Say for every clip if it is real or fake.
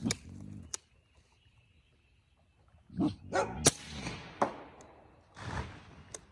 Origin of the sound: real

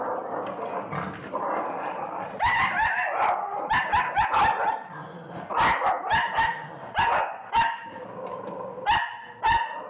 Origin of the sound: real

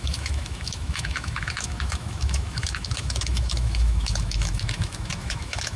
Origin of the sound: fake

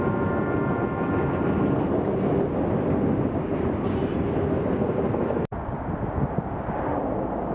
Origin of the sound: real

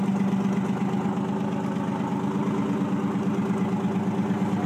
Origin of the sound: real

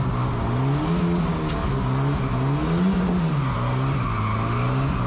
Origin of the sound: real